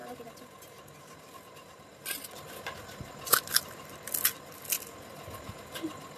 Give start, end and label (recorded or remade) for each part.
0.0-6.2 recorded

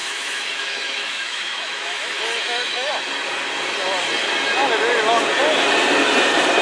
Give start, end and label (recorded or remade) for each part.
0.0-2.9 remade; 2.9-6.6 recorded

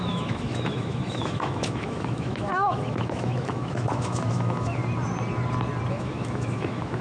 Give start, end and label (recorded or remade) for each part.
0.0-4.8 remade; 4.8-5.9 recorded; 5.9-7.0 remade